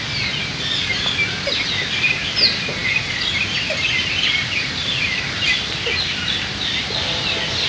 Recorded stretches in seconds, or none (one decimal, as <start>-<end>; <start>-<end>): 0.0-7.7